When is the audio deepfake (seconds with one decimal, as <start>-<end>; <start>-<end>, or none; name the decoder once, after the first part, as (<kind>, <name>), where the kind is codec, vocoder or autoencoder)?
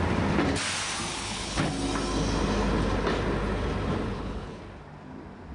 1.1-1.7 (codec, HILCodec); 4.1-4.6